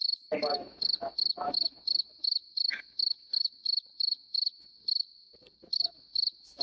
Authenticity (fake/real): fake